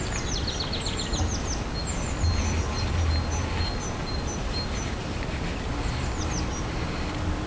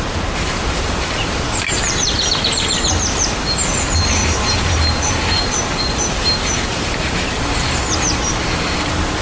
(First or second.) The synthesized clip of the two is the second